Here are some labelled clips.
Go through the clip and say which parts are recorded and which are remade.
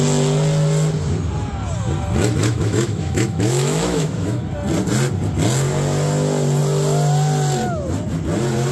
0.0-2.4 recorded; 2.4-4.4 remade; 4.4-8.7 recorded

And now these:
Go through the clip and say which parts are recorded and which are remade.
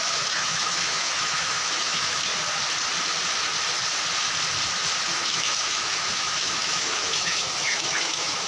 0.0-2.3 remade; 2.3-5.0 recorded; 5.0-8.5 remade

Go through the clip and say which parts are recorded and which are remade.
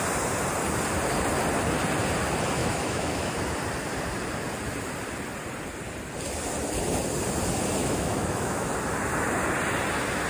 0.0-2.6 recorded; 2.6-3.4 remade; 3.4-7.8 recorded; 7.8-8.7 remade; 8.7-10.3 recorded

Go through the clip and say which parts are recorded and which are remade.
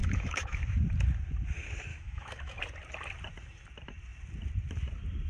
0.0-0.6 remade; 0.6-1.9 recorded; 1.9-2.6 remade; 2.6-5.3 recorded